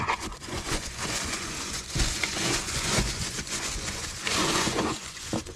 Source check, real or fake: fake